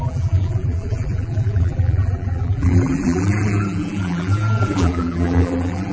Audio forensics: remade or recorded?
remade